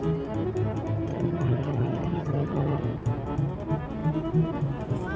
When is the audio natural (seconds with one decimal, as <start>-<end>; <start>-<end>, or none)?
0.0-1.1; 2.8-5.2